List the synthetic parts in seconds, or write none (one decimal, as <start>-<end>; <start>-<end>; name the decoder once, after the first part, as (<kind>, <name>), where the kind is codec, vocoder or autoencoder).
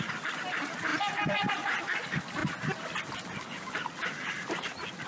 0.9-1.8 (vocoder, BigVGAN v2)